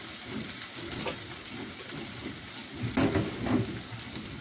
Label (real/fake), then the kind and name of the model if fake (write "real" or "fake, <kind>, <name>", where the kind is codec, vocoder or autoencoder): real